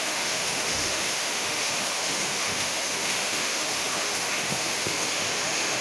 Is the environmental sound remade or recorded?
remade